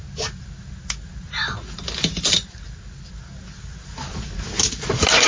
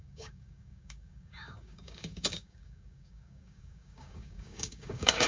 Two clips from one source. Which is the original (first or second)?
first